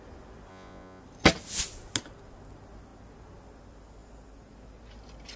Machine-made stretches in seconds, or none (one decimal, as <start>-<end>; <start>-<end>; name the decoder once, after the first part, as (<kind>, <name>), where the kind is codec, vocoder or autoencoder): 0.5-1.0 (vocoder, Vocos)